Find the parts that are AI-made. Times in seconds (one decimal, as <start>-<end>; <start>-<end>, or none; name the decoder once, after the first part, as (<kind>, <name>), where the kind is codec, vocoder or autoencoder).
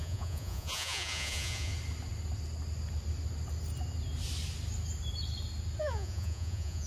0.0-1.7 (vocoder, Vocos); 5.8-6.9